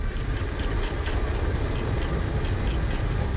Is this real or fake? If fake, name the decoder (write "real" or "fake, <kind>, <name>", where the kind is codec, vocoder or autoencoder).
real